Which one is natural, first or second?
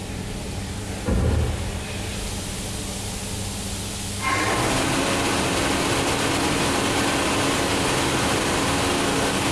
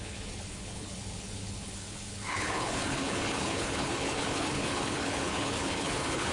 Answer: first